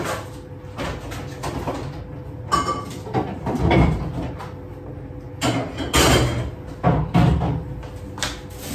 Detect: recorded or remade recorded